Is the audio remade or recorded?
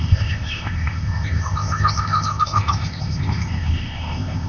remade